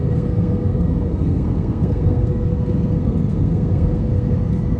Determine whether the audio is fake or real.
fake